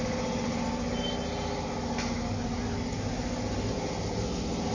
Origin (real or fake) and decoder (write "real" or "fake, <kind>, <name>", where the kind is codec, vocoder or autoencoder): real